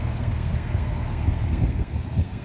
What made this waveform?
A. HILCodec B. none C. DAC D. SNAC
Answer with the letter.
D